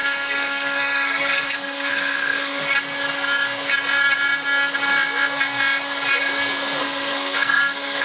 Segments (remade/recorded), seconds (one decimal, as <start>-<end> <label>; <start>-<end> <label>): 0.0-2.6 remade; 2.6-6.8 recorded; 6.8-8.0 remade